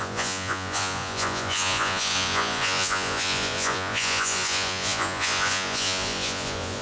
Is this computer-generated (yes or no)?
yes